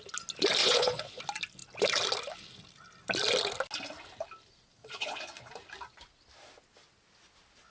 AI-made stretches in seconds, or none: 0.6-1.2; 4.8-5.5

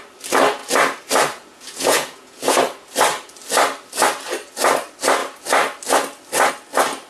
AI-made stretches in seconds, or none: 1.5-2.6

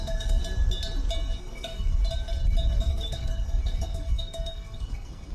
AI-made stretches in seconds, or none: 0.0-0.4; 1.4-2.0; 2.8-5.3

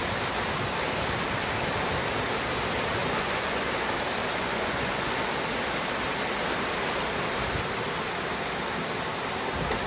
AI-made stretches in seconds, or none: 3.0-3.6; 4.2-5.2

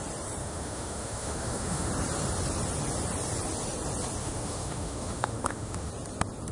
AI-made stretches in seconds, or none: 0.4-1.9; 4.2-5.9

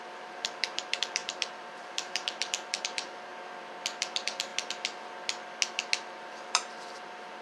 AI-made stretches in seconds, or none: 0.0-3.3; 4.0-4.5; 6.1-7.4

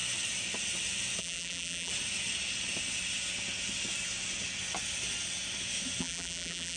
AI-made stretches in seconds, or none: 1.2-1.9; 6.0-6.8